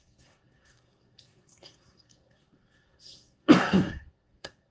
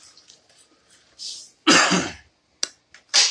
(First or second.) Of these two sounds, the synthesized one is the first